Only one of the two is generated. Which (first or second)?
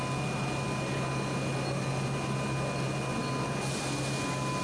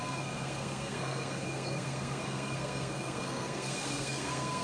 second